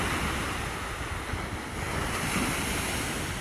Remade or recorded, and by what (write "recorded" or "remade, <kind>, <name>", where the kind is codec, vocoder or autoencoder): recorded